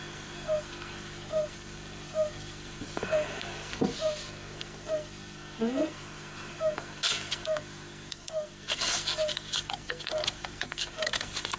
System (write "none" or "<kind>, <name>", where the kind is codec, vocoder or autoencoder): codec, SNAC